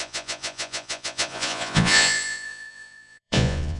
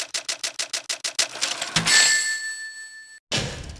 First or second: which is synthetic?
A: first